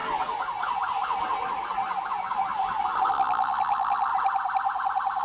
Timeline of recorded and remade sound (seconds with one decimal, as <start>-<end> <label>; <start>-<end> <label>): 0.0-3.1 recorded; 3.1-4.1 remade; 4.1-5.2 recorded